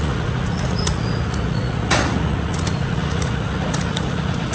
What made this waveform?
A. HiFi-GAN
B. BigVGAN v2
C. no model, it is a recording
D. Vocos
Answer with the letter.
D